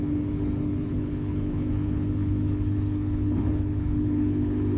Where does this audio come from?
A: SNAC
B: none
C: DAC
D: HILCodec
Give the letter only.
D